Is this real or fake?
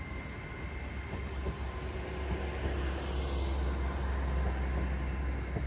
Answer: real